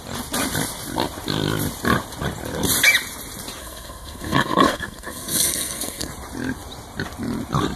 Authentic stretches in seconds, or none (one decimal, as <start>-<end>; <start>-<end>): 0.0-3.6; 6.1-7.8